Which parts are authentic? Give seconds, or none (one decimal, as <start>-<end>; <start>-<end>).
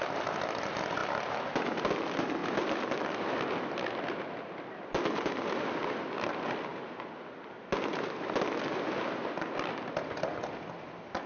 0.0-11.3